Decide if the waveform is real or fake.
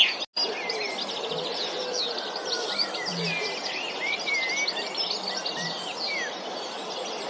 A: real